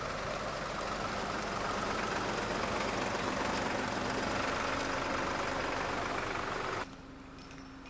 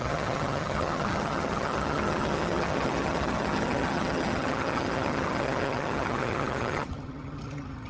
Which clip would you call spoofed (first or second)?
second